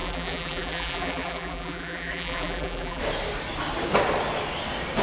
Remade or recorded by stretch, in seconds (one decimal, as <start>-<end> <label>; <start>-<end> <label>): 0.0-3.0 remade; 3.0-5.0 recorded